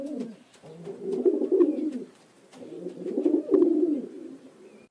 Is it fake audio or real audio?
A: fake